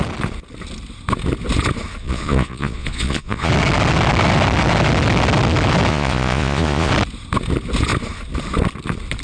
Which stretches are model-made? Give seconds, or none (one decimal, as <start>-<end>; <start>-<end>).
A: 2.0-3.5; 5.9-6.9